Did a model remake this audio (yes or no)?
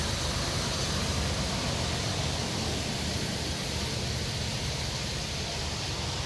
no